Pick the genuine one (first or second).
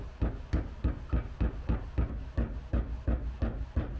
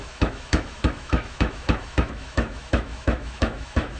first